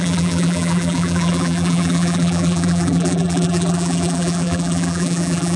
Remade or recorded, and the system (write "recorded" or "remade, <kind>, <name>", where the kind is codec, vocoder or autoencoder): remade, vocoder, BigVGAN v2